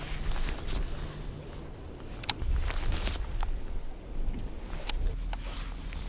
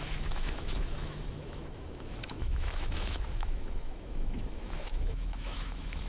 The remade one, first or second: second